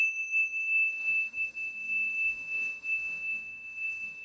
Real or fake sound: fake